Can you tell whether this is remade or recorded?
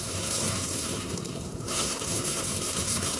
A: remade